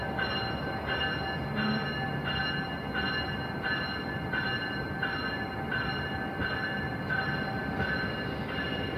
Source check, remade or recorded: recorded